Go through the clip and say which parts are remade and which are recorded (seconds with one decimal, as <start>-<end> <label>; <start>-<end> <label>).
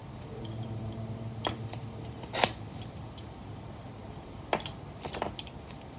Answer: 0.0-3.6 remade; 3.6-4.0 recorded; 4.0-4.5 remade; 4.5-6.0 recorded